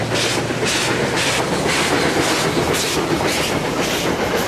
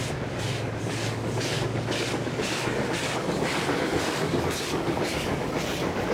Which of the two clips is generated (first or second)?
second